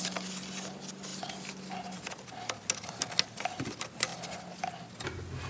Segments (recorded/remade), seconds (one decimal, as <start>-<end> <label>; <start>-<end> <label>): 0.0-5.5 recorded